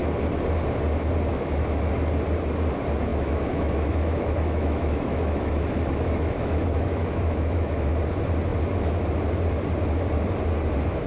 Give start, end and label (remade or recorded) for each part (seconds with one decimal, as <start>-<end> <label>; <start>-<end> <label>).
0.0-1.3 recorded; 1.3-1.9 remade; 1.9-3.1 recorded; 3.1-7.9 remade; 7.9-11.1 recorded